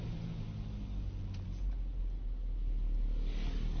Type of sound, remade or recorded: recorded